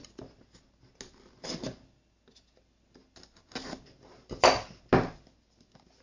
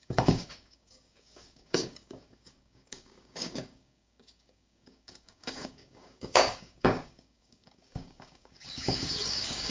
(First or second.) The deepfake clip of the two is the second